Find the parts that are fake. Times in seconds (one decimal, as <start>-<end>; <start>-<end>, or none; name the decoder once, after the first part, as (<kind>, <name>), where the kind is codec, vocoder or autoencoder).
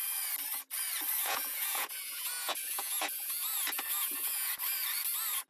1.2-4.5 (vocoder, Vocos)